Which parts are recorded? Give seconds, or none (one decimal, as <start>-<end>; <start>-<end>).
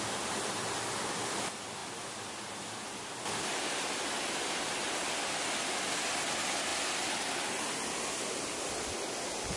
0.0-9.6